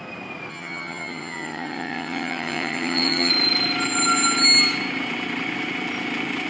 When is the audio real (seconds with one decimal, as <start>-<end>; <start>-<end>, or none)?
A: 0.0-0.5; 3.3-6.5